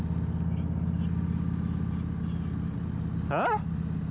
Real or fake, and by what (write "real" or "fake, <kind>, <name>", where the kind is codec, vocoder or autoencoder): real